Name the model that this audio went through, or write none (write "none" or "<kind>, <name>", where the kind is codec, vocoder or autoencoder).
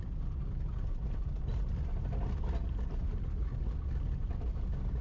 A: none